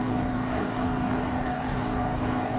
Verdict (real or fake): fake